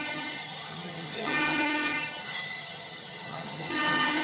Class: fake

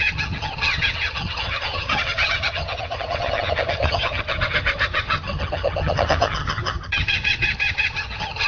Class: fake